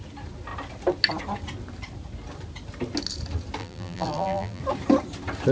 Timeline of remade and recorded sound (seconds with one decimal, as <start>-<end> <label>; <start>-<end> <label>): 0.0-3.6 recorded; 3.6-4.6 remade; 4.6-5.5 recorded